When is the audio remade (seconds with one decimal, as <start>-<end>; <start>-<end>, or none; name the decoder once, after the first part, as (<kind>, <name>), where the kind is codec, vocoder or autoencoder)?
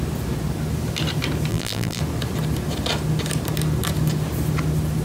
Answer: 1.5-2.0 (vocoder, BigVGAN v2)